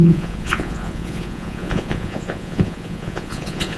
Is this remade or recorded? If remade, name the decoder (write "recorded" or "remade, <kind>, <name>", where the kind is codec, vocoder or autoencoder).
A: remade, vocoder, Vocos